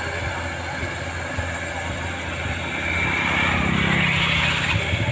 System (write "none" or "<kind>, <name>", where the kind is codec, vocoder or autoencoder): none